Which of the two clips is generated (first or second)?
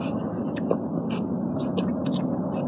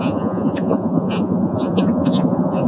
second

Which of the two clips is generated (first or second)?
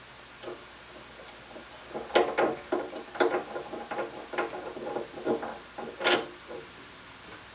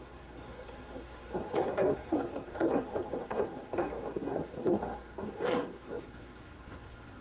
second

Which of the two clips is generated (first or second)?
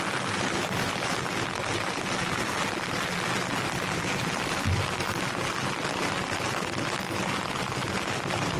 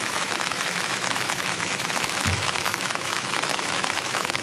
second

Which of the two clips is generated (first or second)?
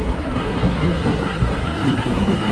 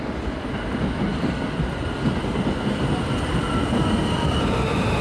first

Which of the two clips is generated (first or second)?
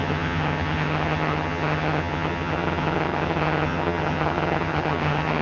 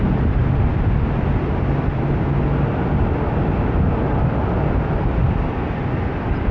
first